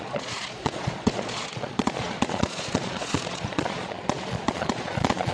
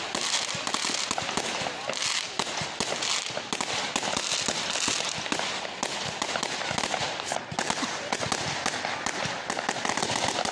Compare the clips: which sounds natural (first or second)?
second